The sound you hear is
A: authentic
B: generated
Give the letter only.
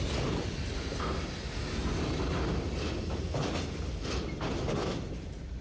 A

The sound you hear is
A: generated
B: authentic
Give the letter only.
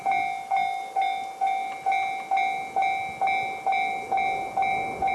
B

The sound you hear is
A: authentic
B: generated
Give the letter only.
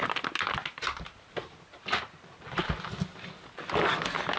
A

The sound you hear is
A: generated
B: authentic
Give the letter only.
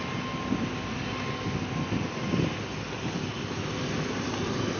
B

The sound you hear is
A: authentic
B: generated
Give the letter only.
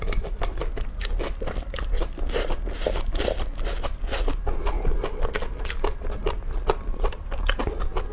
A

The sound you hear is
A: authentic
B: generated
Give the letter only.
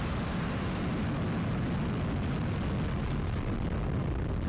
A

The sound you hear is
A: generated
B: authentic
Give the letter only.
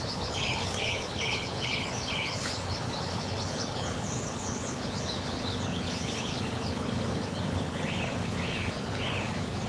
A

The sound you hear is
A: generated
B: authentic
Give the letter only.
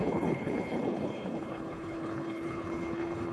A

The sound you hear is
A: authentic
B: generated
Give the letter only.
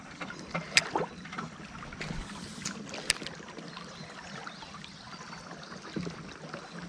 A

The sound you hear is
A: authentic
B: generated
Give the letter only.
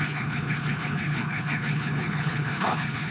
B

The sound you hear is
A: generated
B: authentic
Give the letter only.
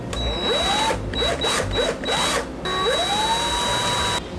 B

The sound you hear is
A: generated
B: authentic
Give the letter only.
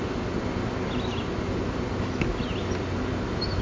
B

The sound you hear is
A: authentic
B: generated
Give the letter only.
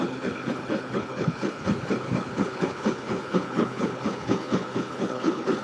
B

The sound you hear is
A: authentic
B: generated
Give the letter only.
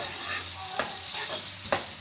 A